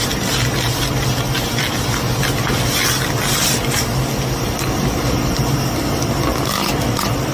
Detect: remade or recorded recorded